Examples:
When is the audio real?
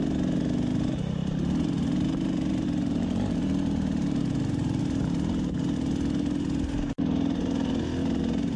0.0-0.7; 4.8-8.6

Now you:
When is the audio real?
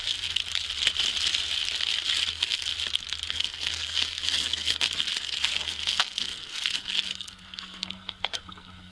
0.4-2.3; 2.7-3.3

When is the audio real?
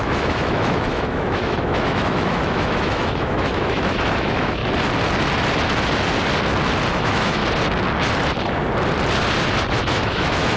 4.6-6.9; 7.4-9.9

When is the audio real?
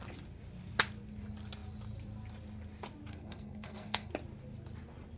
0.0-3.1; 4.1-5.2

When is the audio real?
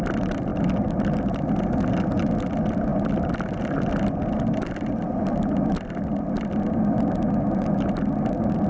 0.0-0.5; 1.9-8.7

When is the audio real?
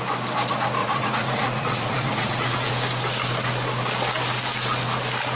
0.0-0.8; 2.7-5.4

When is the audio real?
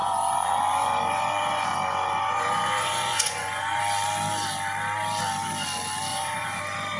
3.8-6.1; 6.6-7.0